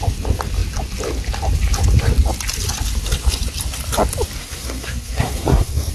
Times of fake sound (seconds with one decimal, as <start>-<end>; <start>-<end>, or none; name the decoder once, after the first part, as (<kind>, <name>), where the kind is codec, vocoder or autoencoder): 4.4-5.9 (codec, SNAC)